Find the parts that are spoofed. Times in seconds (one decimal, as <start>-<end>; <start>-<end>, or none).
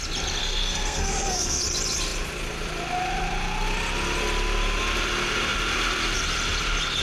0.4-1.6